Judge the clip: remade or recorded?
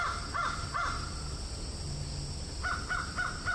recorded